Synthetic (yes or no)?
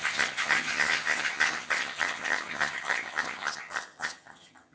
yes